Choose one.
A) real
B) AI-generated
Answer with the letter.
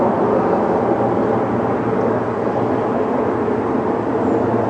A